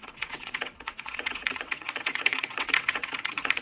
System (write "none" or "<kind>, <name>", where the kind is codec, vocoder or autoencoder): vocoder, WaveNeXt